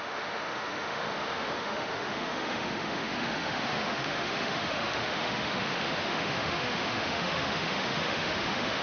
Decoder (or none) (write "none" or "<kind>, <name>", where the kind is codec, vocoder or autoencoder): autoencoder, DAC-VAE